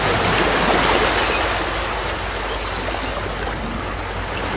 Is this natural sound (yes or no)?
yes